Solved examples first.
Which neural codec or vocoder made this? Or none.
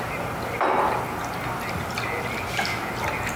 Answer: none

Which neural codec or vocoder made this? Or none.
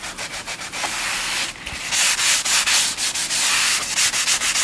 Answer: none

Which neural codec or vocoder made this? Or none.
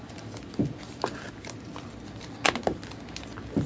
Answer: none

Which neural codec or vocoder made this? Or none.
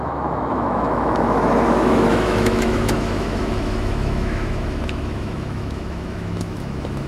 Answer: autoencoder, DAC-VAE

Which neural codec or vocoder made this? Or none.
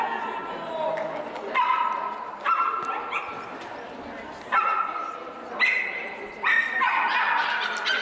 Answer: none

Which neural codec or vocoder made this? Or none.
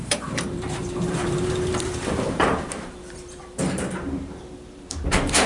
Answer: vocoder, BigVGAN v2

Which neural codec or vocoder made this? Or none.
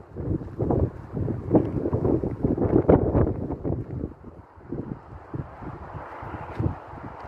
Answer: none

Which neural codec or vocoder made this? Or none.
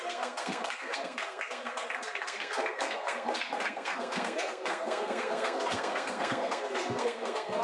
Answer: codec, SNAC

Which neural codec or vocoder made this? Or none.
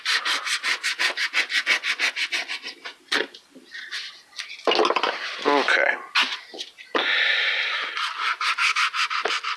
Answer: none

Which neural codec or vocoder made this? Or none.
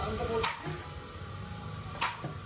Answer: none